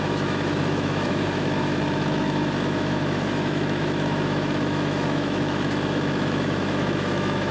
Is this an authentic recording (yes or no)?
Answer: no